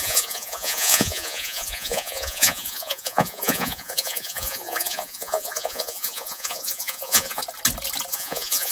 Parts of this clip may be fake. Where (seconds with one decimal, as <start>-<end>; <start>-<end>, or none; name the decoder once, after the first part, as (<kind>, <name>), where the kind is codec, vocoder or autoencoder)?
0.0-7.4 (vocoder, Vocos); 8.1-8.7